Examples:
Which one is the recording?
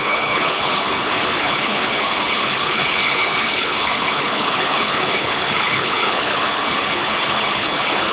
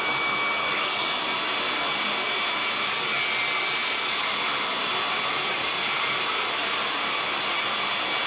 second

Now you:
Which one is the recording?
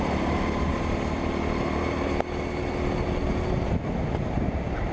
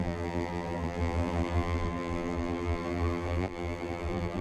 first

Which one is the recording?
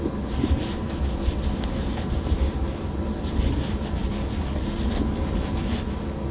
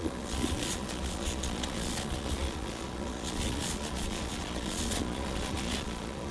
first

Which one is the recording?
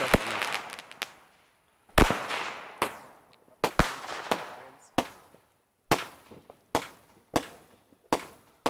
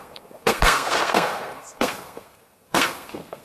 first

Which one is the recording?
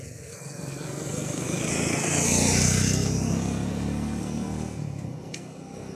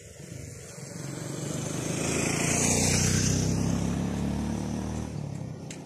second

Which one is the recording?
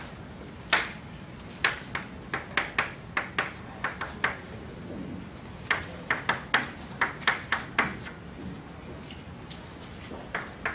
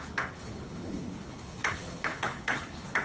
first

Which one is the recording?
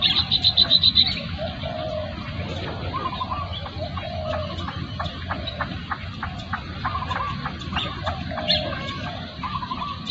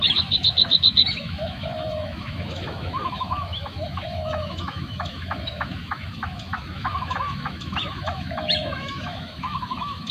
first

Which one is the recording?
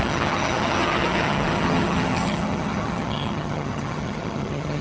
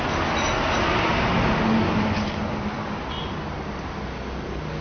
second